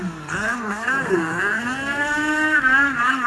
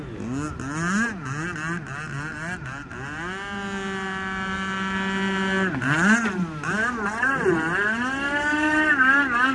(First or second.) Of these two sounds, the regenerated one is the first